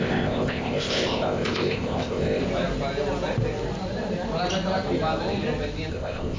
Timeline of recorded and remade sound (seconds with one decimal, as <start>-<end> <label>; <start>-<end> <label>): 0.0-2.4 remade; 2.4-5.9 recorded; 5.9-6.4 remade